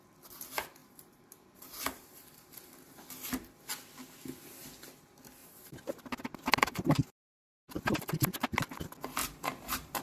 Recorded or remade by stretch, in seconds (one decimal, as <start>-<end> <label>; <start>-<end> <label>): 0.0-0.8 recorded; 0.8-2.7 remade; 2.7-5.4 recorded; 5.4-6.8 remade; 6.8-9.2 recorded; 9.2-10.0 remade